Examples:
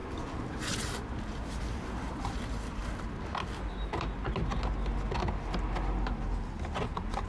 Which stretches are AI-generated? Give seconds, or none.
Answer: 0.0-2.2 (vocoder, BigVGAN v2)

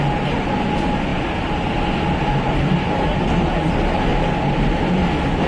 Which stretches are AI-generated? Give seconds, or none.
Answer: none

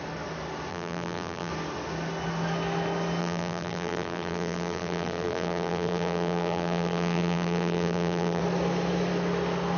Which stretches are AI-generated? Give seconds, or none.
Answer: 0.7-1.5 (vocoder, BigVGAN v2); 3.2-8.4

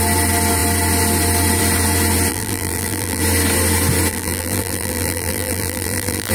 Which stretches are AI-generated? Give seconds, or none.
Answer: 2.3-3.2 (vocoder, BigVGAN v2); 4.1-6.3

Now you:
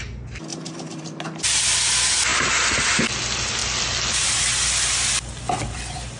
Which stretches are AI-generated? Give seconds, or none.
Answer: 0.5-1.2 (vocoder, BigVGAN v2); 2.3-3.0

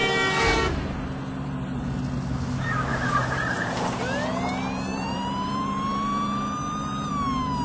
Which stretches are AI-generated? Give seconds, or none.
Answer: 2.9-3.9 (vocoder, BigVGAN v2); 4.9-7.1

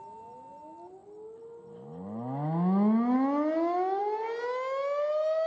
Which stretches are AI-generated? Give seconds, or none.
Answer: none